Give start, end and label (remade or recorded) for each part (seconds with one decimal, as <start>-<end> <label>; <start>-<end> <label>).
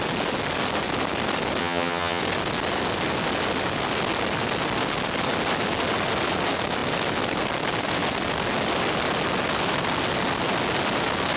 0.0-1.6 recorded; 1.6-2.2 remade; 2.2-11.4 recorded